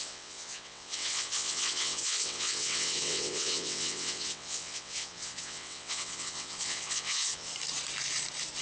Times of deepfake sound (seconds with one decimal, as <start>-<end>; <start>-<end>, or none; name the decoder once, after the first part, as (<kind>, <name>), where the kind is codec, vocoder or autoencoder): 0.0-7.5 (vocoder, WaveNeXt)